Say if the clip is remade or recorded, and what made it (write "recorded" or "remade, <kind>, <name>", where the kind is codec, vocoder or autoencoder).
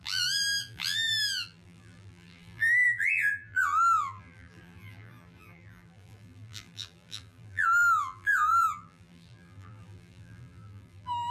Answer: remade, vocoder, BigVGAN v2